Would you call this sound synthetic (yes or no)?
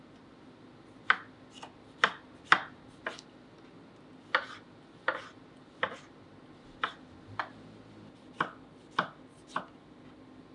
no